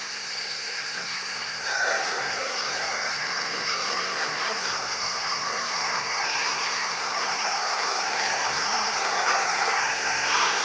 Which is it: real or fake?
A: fake